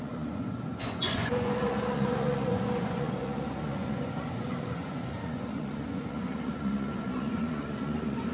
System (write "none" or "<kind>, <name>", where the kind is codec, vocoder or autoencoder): vocoder, Vocos